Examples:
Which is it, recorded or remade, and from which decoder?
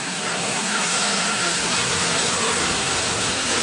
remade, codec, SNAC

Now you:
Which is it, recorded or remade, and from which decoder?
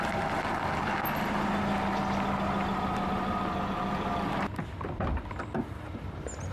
remade, vocoder, BigVGAN v2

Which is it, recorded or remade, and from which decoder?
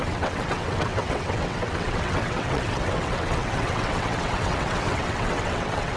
remade, vocoder, WaveNeXt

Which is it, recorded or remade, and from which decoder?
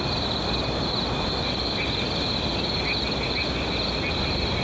recorded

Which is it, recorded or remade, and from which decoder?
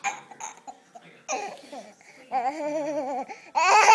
recorded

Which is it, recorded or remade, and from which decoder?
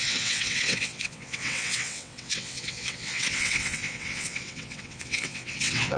remade, vocoder, WaveNeXt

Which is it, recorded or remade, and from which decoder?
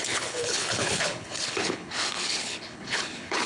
remade, codec, HILCodec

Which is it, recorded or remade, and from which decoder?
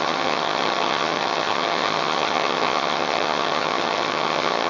remade, vocoder, HiFi-GAN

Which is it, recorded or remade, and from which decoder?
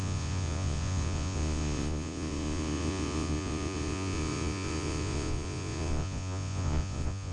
remade, vocoder, Vocos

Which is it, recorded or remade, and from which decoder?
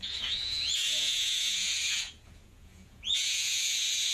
remade, vocoder, Vocos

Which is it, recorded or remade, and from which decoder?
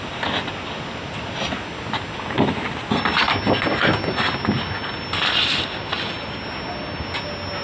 recorded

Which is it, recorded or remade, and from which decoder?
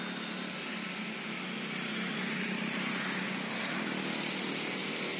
recorded